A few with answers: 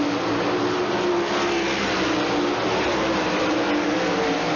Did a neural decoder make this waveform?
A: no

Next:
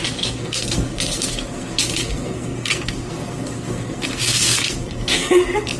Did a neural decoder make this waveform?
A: yes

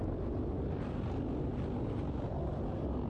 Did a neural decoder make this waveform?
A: no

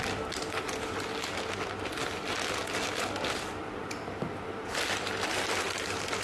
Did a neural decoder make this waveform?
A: no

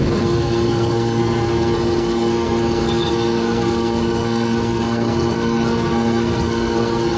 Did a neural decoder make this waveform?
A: yes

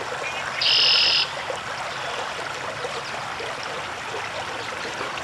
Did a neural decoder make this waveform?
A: no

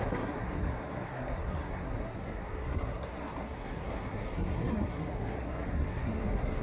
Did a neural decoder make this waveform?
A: yes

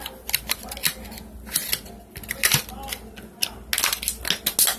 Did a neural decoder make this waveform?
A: no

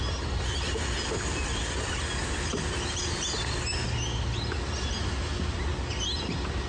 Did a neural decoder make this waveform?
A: no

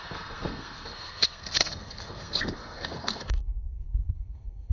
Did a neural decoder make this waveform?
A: yes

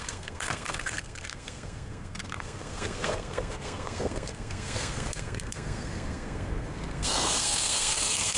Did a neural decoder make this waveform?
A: yes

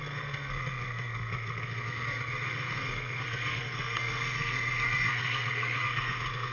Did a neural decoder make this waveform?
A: yes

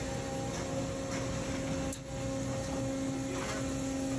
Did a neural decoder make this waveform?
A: no